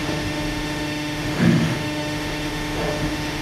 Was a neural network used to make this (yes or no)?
yes